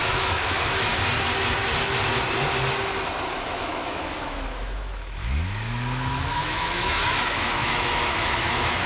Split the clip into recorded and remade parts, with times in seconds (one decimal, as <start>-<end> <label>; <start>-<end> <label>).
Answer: 0.0-0.9 remade; 0.9-3.3 recorded; 3.3-8.9 remade